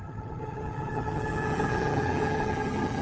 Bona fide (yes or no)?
no